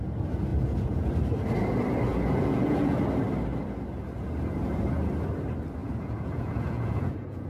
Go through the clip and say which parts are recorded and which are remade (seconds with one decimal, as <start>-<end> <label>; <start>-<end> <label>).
0.0-0.5 recorded; 0.5-1.1 remade; 1.1-2.1 recorded; 2.1-3.0 remade; 3.0-5.8 recorded; 5.8-7.5 remade